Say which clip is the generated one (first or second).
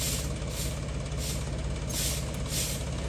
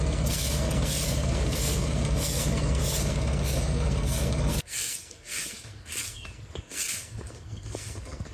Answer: second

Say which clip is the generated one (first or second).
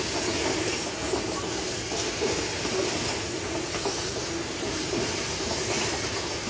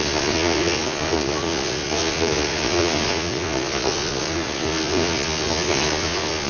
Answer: second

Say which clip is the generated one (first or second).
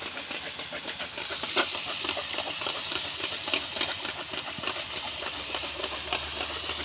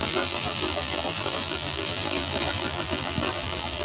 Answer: second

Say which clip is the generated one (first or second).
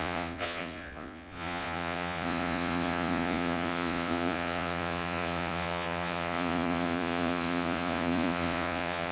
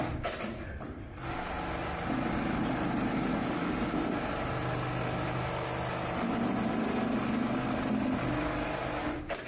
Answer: first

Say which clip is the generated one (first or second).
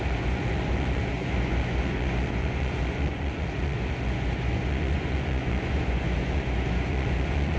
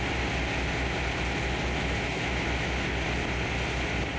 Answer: first